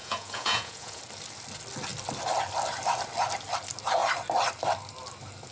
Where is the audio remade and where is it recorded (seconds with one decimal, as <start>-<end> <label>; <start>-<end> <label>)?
0.0-1.0 remade; 1.0-5.5 recorded